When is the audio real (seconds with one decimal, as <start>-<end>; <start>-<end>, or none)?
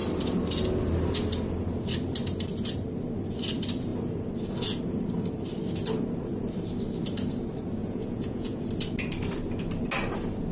0.0-7.8; 8.6-10.5